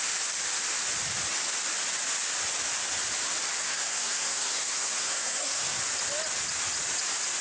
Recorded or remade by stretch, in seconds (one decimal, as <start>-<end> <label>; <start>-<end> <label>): 0.0-3.6 recorded; 3.6-5.8 remade; 5.8-7.4 recorded